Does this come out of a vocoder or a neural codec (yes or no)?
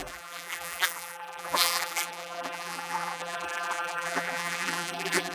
yes